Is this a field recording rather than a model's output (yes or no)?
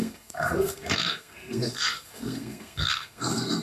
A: no